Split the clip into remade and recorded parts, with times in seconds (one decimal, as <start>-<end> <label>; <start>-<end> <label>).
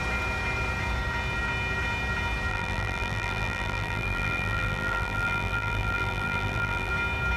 0.0-2.5 recorded; 2.5-6.9 remade; 6.9-7.4 recorded